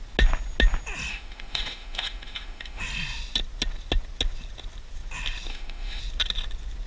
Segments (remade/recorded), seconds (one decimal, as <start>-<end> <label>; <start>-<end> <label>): 0.0-1.1 recorded; 1.1-2.8 remade; 2.8-5.5 recorded; 5.5-6.0 remade; 6.0-6.9 recorded